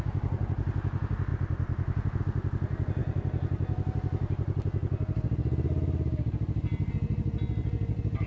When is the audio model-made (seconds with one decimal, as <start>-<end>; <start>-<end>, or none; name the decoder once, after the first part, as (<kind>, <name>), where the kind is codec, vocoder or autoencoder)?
none